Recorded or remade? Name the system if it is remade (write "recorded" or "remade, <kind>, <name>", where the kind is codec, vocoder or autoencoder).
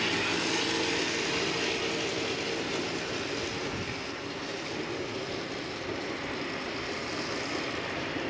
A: recorded